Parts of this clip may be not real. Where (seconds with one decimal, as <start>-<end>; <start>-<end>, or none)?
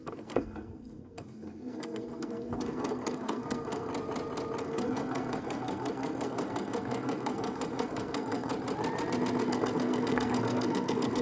0.0-3.9; 4.6-8.5; 9.4-11.2